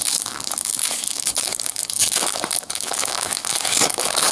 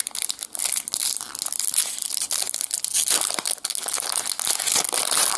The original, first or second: second